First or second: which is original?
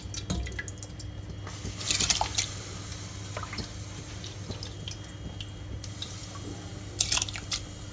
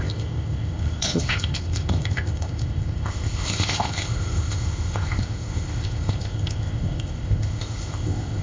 first